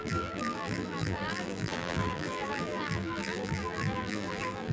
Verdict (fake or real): fake